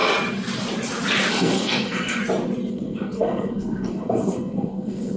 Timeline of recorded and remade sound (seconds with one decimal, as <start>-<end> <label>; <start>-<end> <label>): 0.0-1.3 recorded; 1.3-2.2 remade; 2.2-2.7 recorded; 2.7-5.2 remade